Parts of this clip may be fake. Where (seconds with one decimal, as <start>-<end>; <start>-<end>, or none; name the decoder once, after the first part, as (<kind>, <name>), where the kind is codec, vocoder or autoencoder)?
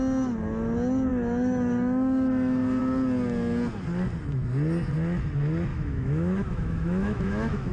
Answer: 1.1-2.8 (autoencoder, DAC-VAE); 5.7-7.7